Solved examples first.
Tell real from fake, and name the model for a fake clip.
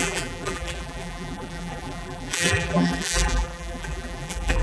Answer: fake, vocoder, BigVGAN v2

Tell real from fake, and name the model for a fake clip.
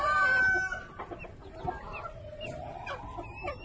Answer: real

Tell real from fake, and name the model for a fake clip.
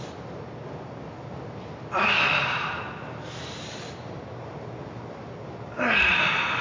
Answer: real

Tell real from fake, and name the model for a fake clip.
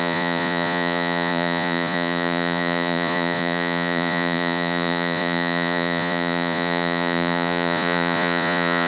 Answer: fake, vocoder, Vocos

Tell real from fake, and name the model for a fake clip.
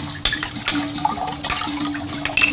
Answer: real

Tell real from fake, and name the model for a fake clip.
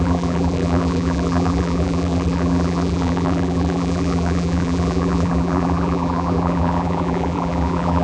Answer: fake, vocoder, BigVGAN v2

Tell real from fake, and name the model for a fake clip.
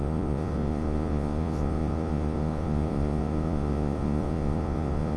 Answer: fake, vocoder, Vocos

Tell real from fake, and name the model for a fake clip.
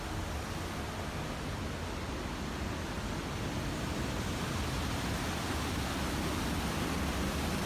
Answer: real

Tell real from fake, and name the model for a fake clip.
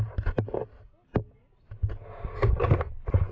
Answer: real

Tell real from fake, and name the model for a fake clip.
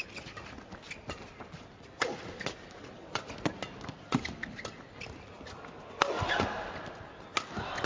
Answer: real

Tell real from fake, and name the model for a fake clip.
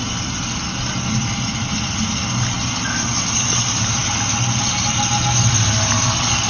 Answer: real